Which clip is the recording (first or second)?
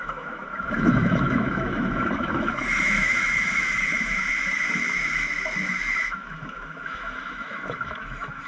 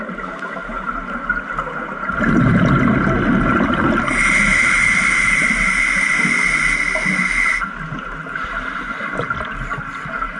second